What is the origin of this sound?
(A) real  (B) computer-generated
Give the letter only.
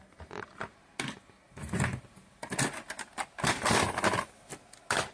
A